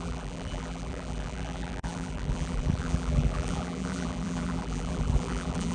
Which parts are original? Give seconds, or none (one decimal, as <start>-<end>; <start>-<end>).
none